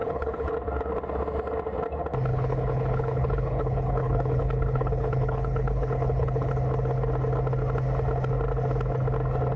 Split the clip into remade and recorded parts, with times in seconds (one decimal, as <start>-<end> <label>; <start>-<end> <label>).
0.0-0.5 remade; 0.5-2.3 recorded; 2.3-6.5 remade; 6.5-9.6 recorded